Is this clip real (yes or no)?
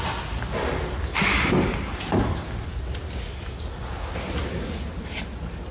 yes